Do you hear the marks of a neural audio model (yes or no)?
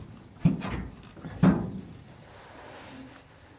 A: no